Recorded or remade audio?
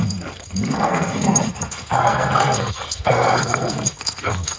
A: remade